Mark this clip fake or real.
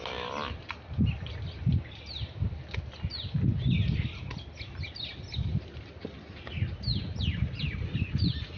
real